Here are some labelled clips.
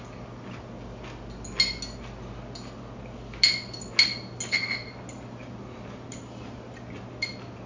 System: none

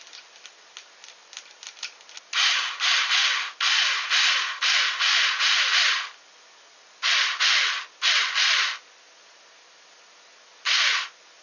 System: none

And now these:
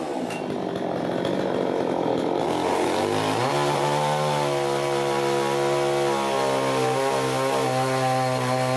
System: none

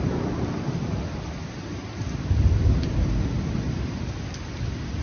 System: none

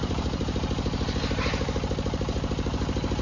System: vocoder, BigVGAN v2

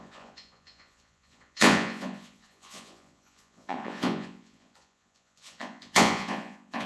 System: vocoder, Vocos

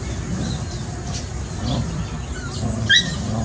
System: none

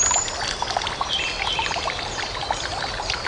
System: none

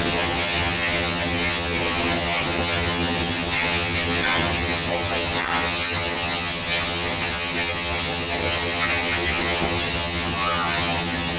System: vocoder, HiFi-GAN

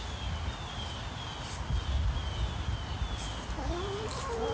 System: none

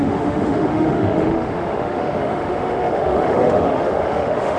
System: autoencoder, DAC-VAE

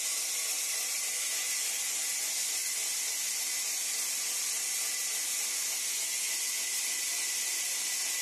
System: none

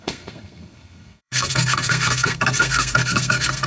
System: codec, SNAC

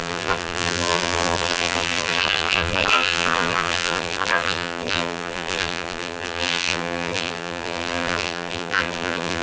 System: vocoder, BigVGAN v2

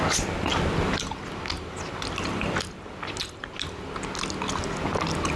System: none